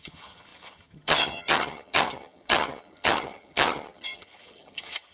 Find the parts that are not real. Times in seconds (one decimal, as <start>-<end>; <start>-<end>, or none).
0.0-5.1